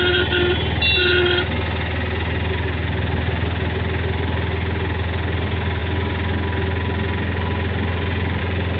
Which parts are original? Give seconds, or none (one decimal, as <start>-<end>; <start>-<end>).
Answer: 0.0-8.8